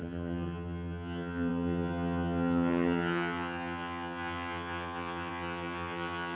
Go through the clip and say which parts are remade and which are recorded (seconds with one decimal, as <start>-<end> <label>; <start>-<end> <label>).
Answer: 0.0-6.4 remade

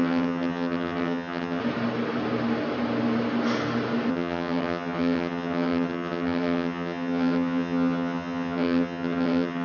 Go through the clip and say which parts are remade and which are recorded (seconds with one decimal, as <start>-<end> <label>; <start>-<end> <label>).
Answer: 0.0-1.6 remade; 1.6-4.1 recorded; 4.1-9.6 remade

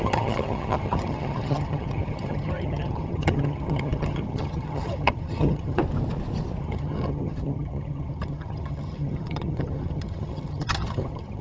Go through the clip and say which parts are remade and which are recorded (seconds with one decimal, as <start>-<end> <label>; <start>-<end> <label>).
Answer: 0.0-5.8 remade; 5.8-6.6 recorded; 6.6-11.4 remade

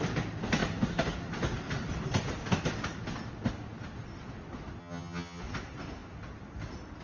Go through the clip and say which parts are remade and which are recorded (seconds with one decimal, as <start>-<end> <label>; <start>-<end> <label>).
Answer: 0.0-4.8 recorded; 4.8-5.4 remade; 5.4-7.0 recorded

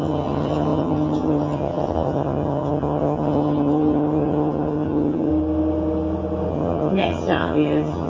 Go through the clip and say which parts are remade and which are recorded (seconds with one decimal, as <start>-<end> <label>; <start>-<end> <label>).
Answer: 0.0-5.3 remade; 5.3-6.5 recorded; 6.5-8.1 remade